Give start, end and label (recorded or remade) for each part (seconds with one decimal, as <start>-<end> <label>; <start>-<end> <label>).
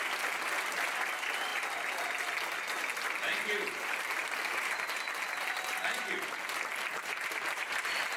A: 0.0-8.2 recorded